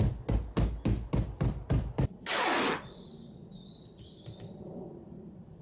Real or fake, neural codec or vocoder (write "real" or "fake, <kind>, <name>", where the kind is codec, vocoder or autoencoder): real